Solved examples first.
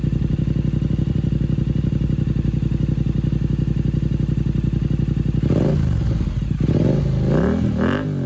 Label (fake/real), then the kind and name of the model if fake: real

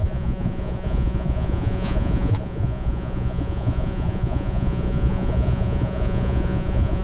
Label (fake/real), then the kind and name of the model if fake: fake, vocoder, Vocos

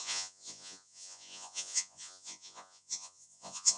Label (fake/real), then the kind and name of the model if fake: fake, vocoder, Vocos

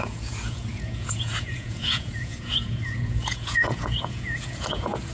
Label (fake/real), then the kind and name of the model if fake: fake, vocoder, Vocos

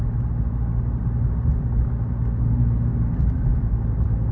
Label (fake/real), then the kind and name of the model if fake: real